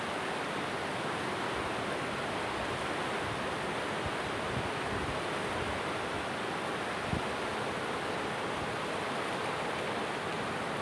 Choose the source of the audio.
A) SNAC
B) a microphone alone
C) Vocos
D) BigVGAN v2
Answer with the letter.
B